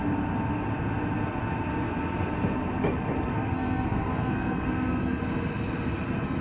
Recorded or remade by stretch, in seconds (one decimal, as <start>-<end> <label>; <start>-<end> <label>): 0.0-3.3 recorded; 3.3-5.2 remade; 5.2-6.4 recorded